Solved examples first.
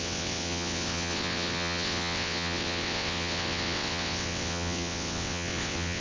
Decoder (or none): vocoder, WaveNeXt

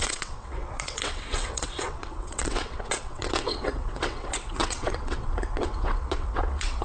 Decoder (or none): vocoder, WaveNeXt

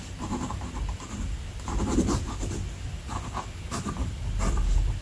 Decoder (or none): none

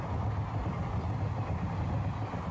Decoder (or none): none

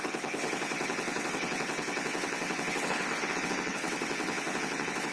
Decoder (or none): vocoder, WaveNeXt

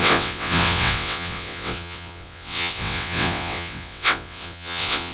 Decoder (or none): vocoder, WaveNeXt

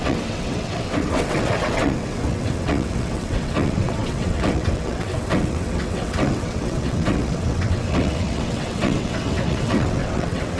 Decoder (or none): vocoder, WaveNeXt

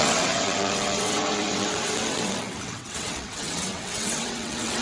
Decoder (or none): vocoder, WaveNeXt